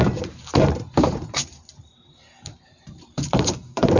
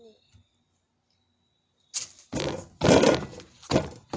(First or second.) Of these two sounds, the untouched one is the second